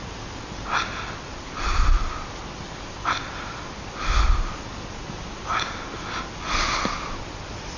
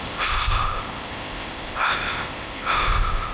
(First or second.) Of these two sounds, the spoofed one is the second